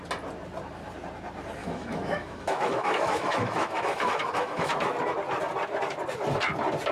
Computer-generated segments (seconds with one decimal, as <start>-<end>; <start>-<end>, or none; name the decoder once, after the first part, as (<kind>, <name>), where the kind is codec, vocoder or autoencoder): 1.6-4.7 (autoencoder, DAC-VAE)